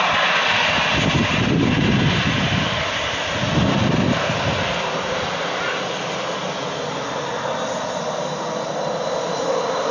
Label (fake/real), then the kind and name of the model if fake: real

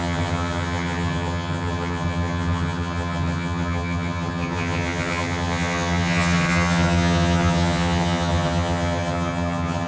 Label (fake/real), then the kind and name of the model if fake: fake, vocoder, HiFi-GAN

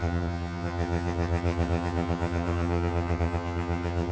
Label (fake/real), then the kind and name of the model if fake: fake, vocoder, HiFi-GAN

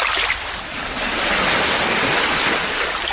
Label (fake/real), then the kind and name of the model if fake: real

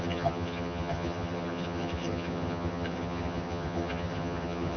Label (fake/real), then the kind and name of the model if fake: fake, vocoder, HiFi-GAN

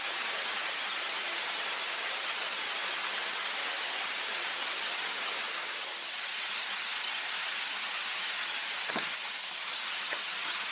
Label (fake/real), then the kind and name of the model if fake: fake, vocoder, HiFi-GAN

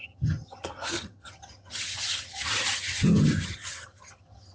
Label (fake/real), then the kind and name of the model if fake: fake, vocoder, HiFi-GAN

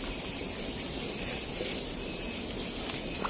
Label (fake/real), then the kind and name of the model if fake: real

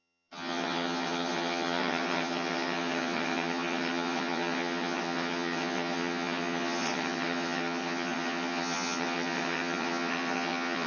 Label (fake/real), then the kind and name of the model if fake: fake, vocoder, HiFi-GAN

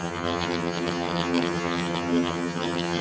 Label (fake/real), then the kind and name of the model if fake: fake, vocoder, HiFi-GAN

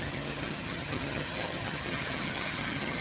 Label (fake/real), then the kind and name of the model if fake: fake, vocoder, HiFi-GAN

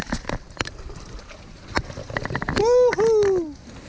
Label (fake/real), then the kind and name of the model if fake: real